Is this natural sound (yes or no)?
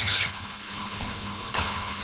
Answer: no